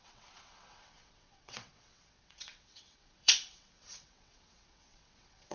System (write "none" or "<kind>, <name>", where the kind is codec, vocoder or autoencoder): vocoder, WaveNeXt